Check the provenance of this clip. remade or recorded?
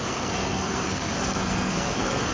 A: remade